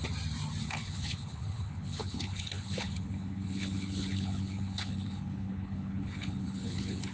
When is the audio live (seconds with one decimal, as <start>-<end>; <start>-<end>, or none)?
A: 0.0-0.6